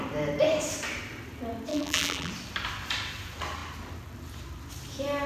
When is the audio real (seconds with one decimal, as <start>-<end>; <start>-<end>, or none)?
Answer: 0.0-1.7; 2.3-5.3